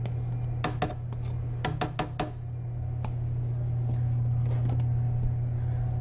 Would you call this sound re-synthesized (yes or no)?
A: no